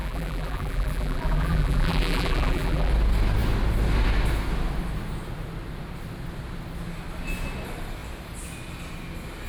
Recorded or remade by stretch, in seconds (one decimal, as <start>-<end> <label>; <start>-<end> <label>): 0.0-2.9 remade; 2.9-9.5 recorded